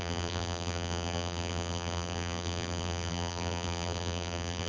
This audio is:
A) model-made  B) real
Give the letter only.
A